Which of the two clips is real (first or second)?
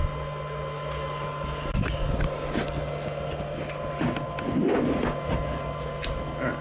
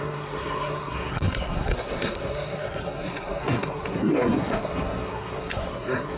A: first